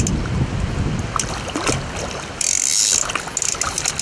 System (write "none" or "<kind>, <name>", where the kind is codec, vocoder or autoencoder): none